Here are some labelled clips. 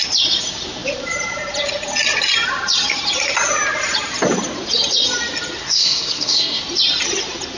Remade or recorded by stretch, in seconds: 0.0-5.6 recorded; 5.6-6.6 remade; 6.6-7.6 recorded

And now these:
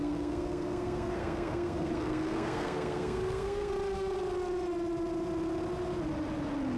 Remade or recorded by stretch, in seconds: 0.0-3.7 remade; 3.7-6.8 recorded

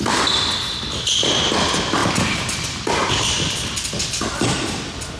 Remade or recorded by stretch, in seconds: 0.0-5.2 recorded

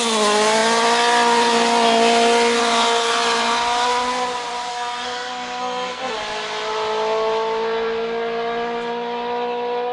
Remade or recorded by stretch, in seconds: 0.0-4.7 recorded; 4.7-6.2 remade; 6.2-9.9 recorded

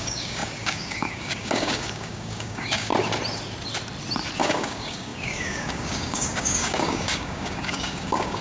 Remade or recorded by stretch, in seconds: 0.0-2.9 remade; 2.9-4.4 recorded; 4.4-8.4 remade

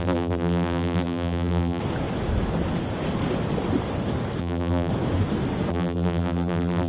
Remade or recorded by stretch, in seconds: 0.0-1.8 remade; 1.8-4.4 recorded; 4.4-4.9 remade; 4.9-5.7 recorded; 5.7-6.9 remade

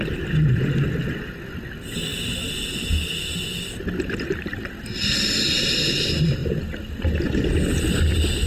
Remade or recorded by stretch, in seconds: 0.0-8.5 recorded

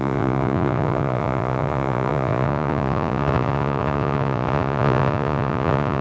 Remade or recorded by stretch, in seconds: 0.0-6.0 remade